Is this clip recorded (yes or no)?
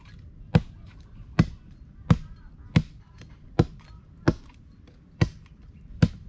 yes